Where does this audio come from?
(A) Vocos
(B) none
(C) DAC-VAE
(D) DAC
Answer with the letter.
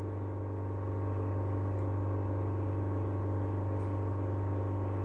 B